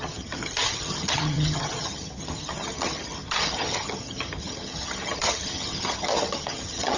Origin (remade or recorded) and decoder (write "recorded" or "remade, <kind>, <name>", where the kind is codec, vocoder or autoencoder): remade, vocoder, HiFi-GAN